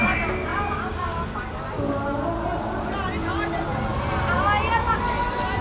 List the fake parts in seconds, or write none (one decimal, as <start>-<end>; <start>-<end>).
3.3-4.0